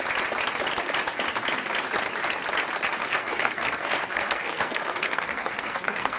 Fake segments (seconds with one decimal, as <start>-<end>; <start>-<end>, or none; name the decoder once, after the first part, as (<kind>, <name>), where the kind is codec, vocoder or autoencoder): 3.0-6.2 (codec, SNAC)